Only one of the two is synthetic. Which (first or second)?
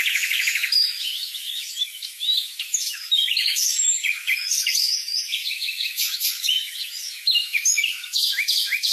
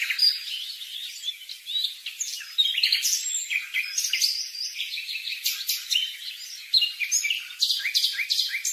first